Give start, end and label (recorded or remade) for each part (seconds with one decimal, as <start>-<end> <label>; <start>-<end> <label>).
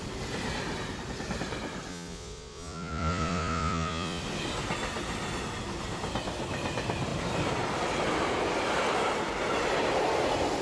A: 0.0-1.9 recorded; 1.9-4.2 remade; 4.2-10.6 recorded